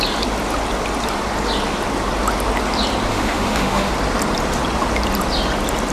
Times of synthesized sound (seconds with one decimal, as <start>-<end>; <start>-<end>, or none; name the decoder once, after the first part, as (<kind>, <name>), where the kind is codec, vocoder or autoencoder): 3.1-3.9 (autoencoder, DAC-VAE)